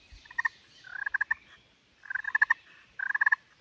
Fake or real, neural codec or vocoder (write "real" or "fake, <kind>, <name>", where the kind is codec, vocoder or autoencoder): real